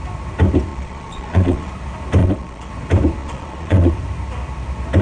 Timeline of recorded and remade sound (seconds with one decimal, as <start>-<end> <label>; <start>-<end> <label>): 0.0-0.7 recorded; 0.7-1.7 remade; 1.7-2.2 recorded; 2.2-2.7 remade; 2.7-3.2 recorded; 3.2-3.9 remade; 3.9-5.0 recorded